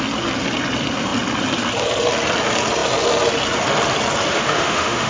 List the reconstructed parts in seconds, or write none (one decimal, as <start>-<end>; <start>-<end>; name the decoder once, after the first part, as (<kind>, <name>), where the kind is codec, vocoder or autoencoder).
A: 4.3-5.1 (autoencoder, DAC-VAE)